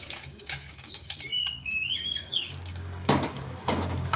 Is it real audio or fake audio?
fake